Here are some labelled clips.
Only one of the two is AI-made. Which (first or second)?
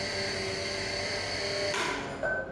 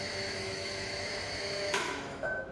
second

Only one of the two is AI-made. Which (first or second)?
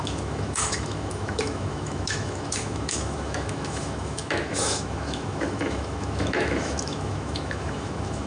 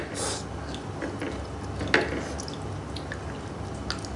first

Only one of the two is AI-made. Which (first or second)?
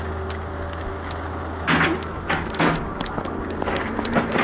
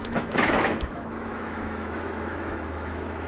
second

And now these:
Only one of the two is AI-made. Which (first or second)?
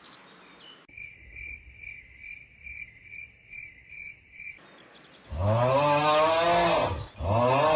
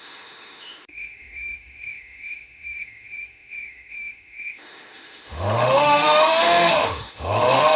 second